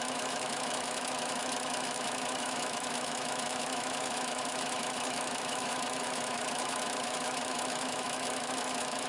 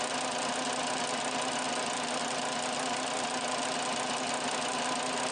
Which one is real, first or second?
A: second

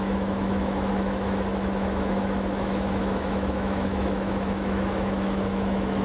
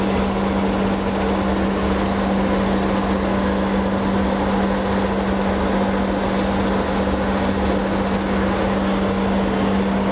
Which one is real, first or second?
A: second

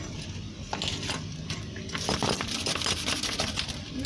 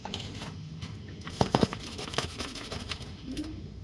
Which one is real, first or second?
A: first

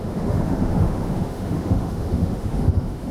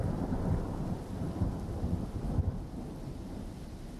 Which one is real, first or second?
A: second